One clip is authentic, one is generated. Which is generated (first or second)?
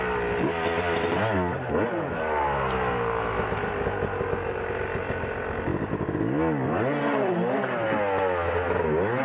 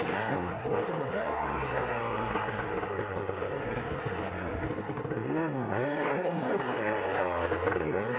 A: second